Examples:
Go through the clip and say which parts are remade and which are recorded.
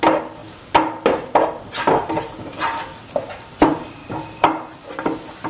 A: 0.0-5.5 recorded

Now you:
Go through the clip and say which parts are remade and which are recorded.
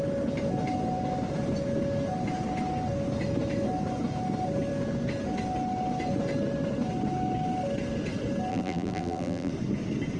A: 0.0-8.5 recorded; 8.5-9.5 remade; 9.5-10.2 recorded